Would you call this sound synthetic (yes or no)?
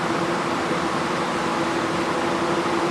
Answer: no